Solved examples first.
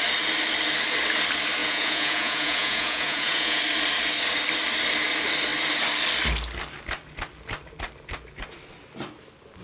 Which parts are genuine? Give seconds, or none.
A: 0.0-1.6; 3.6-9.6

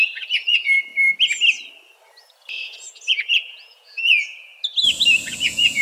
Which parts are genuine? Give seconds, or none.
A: 0.9-2.2; 4.5-5.2

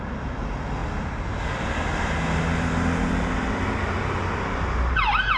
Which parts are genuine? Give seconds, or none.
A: 0.0-5.4

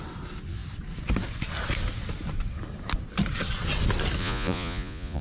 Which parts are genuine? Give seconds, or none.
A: 0.0-4.2

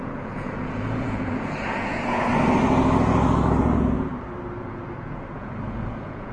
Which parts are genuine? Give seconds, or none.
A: 2.3-3.6; 4.1-4.6

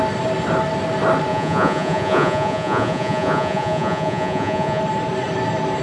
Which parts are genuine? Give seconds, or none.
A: 0.0-1.3; 4.8-5.8

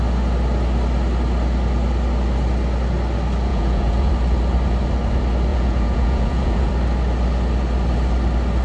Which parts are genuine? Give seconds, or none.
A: 0.0-3.5; 4.1-5.5; 6.7-8.6